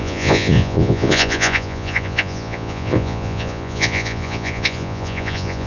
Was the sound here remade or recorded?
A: remade